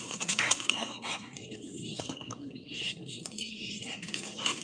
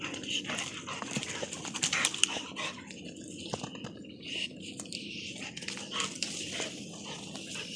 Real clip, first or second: second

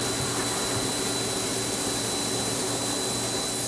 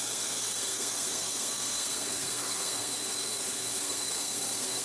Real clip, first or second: first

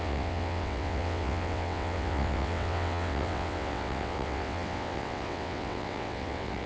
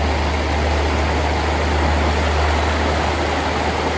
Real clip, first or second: second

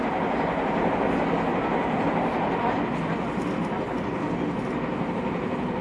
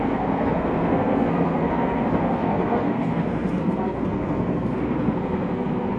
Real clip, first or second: first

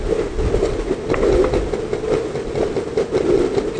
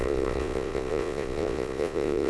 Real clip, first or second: first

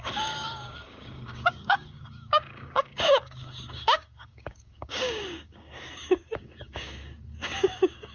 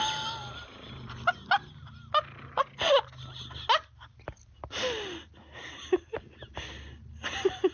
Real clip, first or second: second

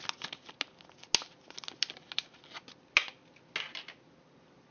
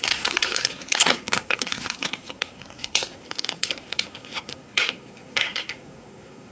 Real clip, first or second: first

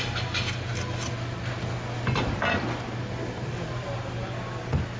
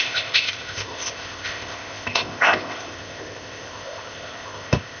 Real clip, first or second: first